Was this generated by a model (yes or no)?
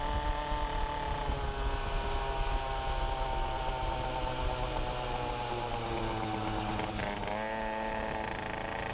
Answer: no